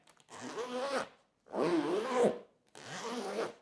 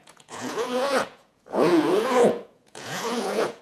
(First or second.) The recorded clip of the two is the first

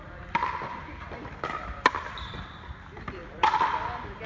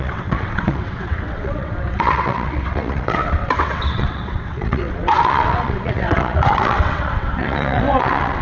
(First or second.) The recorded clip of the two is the first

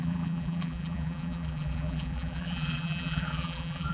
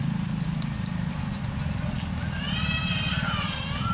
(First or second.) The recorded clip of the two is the second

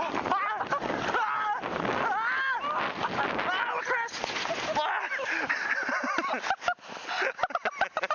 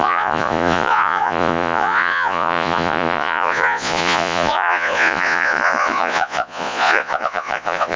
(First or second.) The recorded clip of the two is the first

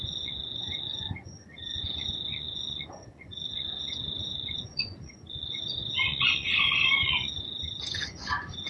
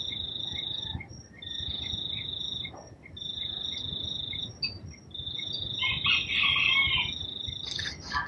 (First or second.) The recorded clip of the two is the second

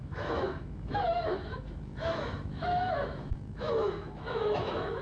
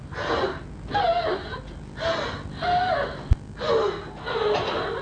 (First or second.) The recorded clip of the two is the second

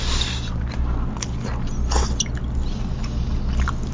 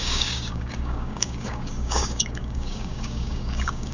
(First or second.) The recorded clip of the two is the first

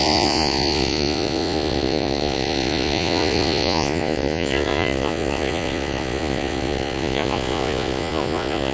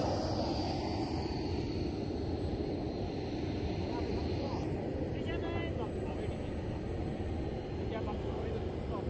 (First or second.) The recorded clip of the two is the second